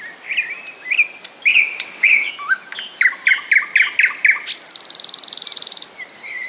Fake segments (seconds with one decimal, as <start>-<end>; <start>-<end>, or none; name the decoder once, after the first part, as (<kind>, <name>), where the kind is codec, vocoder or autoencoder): 1.5-2.3 (vocoder, WaveNeXt)